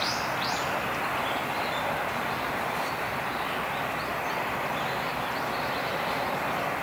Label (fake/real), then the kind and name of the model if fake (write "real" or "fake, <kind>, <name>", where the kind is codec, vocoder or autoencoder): real